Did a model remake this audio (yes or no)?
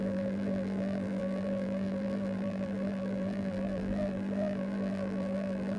yes